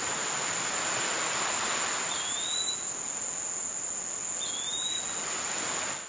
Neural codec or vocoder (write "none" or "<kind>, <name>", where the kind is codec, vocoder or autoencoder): none